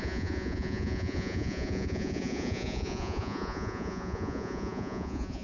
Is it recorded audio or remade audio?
remade